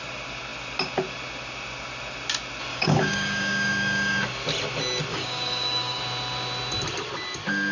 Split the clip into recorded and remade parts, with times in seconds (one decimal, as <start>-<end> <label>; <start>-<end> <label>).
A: 0.0-2.7 recorded; 2.7-4.2 remade; 4.2-5.1 recorded; 5.1-6.0 remade; 6.0-7.7 recorded